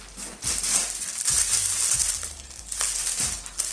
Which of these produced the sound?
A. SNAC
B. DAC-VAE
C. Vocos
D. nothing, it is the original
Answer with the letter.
D